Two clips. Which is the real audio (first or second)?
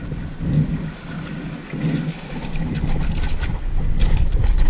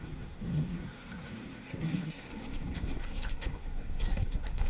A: first